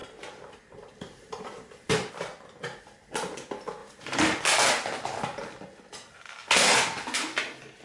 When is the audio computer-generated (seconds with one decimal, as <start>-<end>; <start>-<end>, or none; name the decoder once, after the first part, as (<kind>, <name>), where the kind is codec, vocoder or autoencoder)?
0.0-2.1 (vocoder, BigVGAN v2); 3.8-4.4